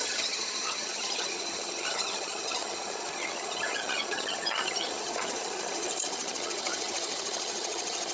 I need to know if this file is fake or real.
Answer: fake